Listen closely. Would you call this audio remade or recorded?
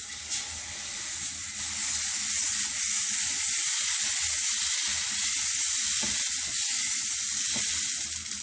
recorded